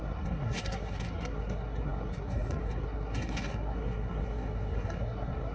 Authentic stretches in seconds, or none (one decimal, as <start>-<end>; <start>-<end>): none